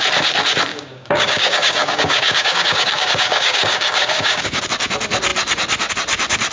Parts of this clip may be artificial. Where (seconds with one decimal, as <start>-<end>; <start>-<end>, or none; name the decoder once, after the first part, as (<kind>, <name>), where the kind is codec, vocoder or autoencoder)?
0.7-4.6 (codec, DAC)